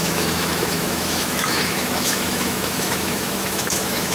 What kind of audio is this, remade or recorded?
remade